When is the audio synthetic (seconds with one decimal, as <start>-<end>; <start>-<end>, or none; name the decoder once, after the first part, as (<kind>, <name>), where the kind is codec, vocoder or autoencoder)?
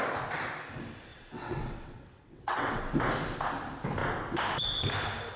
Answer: 1.1-2.9 (vocoder, WaveNeXt)